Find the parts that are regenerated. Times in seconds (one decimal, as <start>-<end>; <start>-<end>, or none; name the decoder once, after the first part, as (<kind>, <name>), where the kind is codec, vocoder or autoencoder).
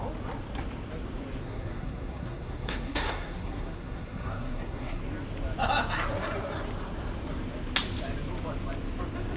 1.4-5.0 (codec, SNAC)